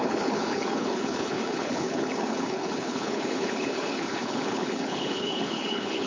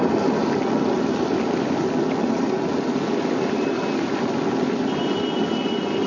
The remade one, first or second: first